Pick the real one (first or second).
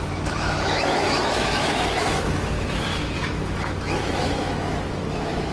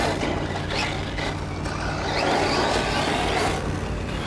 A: second